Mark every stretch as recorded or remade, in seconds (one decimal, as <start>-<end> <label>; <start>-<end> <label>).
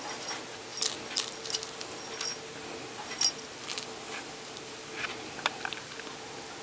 0.0-6.6 recorded